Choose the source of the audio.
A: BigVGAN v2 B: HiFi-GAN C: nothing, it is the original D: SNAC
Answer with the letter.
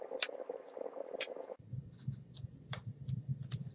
A